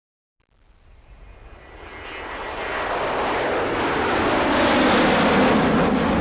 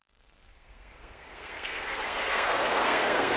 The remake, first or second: second